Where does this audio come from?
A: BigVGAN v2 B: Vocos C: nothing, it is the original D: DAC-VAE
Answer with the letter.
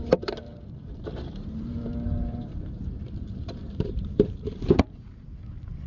A